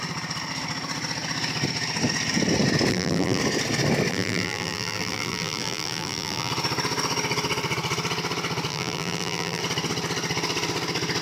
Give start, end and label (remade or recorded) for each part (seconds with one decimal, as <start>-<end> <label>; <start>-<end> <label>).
0.0-2.9 recorded; 2.9-3.4 remade; 3.4-4.1 recorded; 4.1-6.5 remade; 6.5-8.7 recorded; 8.7-9.6 remade; 9.6-11.2 recorded